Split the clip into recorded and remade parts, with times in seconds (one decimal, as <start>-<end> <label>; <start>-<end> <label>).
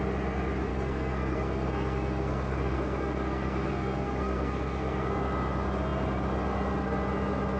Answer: 0.0-0.7 recorded; 0.7-5.2 remade; 5.2-7.6 recorded